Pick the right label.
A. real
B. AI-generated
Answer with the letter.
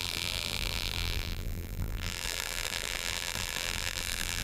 B